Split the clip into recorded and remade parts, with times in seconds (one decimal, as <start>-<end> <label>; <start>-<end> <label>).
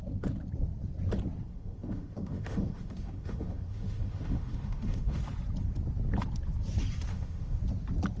0.0-1.5 recorded; 1.5-5.2 remade; 5.2-7.1 recorded; 7.1-7.6 remade; 7.6-8.2 recorded